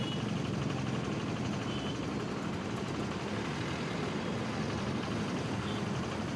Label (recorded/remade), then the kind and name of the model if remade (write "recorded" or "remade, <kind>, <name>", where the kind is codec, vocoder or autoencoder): recorded